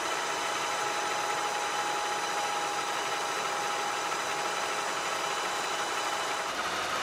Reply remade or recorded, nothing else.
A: recorded